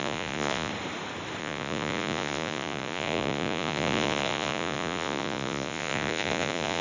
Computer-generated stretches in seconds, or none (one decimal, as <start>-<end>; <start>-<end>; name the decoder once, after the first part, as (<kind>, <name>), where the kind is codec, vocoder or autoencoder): 0.0-0.7 (vocoder, Vocos); 1.4-6.8